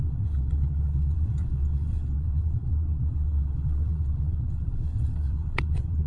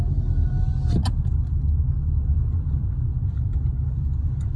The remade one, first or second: first